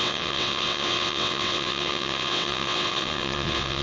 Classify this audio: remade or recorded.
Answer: remade